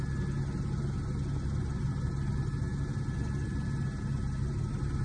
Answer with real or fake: real